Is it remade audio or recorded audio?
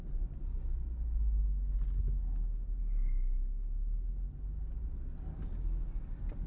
recorded